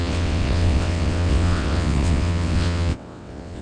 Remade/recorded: remade